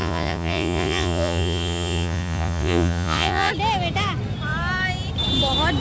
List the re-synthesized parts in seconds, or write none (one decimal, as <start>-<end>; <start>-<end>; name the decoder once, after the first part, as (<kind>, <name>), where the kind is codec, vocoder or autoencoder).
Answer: 0.0-3.5 (vocoder, Vocos)